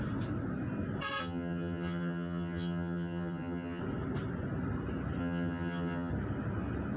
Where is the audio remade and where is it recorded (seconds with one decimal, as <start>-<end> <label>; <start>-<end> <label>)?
0.0-1.2 recorded; 1.2-3.8 remade; 3.8-5.2 recorded; 5.2-6.1 remade; 6.1-7.0 recorded